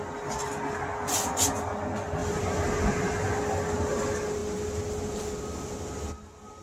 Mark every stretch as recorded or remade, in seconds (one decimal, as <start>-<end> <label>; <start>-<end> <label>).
0.0-2.2 recorded; 2.2-3.3 remade; 3.3-6.6 recorded